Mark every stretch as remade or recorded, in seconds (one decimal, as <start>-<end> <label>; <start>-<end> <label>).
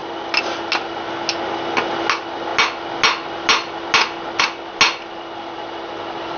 0.0-6.4 recorded